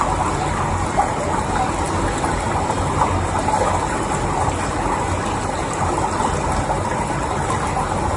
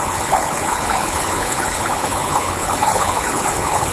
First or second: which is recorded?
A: first